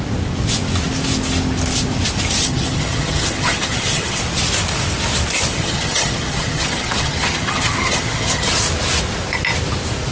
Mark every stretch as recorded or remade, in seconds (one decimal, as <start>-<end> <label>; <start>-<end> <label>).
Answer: 0.0-2.4 recorded; 2.4-4.2 remade; 4.2-5.5 recorded; 5.5-8.5 remade; 8.5-10.1 recorded